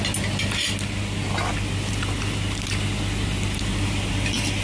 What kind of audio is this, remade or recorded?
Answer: recorded